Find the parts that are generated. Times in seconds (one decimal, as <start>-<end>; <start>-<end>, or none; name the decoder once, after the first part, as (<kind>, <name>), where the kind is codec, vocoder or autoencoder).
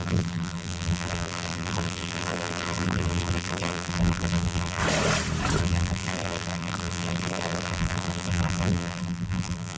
0.0-4.8 (vocoder, BigVGAN v2); 5.6-9.8